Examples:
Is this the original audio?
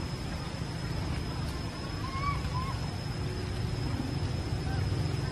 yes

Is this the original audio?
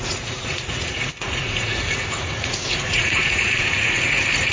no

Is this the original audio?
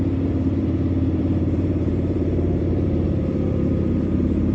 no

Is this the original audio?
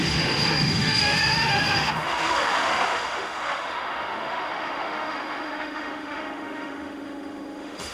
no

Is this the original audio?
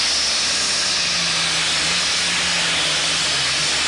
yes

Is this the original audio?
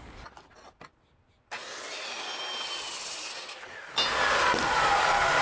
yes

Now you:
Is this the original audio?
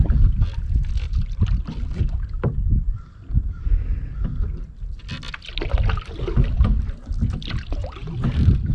yes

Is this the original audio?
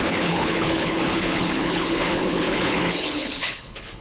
no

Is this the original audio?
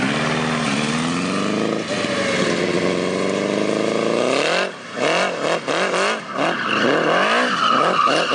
yes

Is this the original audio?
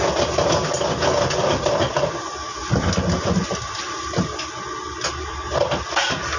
yes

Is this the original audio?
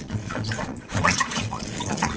no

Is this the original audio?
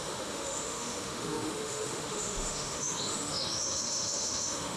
no